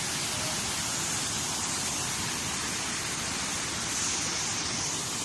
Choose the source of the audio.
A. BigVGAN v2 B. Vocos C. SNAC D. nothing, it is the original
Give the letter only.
D